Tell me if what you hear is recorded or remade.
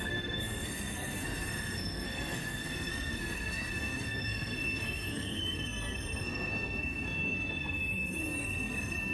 remade